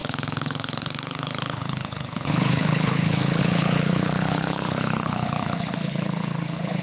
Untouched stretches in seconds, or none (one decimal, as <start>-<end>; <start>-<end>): none